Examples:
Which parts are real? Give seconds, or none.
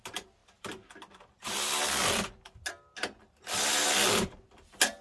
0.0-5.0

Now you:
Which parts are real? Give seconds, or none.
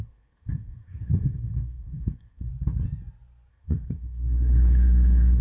2.5-3.5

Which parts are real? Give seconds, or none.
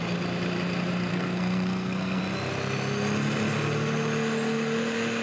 0.0-1.1; 2.2-5.2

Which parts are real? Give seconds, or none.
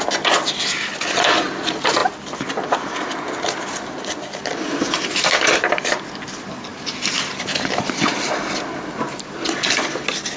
0.0-10.4